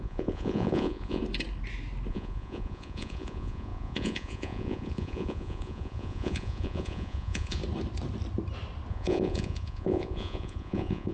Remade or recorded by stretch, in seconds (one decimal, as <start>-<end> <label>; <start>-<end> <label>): 0.0-1.2 remade; 1.2-2.1 recorded; 2.1-7.6 remade; 7.6-8.9 recorded; 8.9-11.1 remade